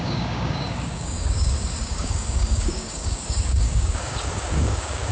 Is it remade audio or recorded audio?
remade